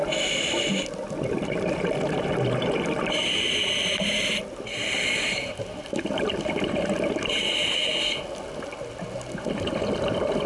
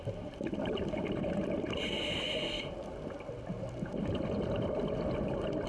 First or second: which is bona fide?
first